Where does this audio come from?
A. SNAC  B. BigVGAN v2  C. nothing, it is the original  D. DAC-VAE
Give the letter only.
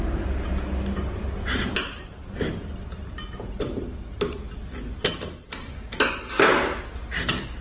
C